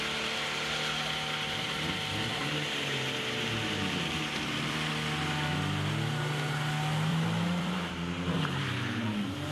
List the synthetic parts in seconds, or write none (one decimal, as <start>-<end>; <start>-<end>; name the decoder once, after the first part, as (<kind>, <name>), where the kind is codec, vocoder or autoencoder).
2.3-4.9 (vocoder, BigVGAN v2); 7.1-9.5